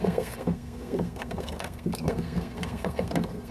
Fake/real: fake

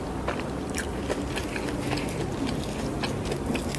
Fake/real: real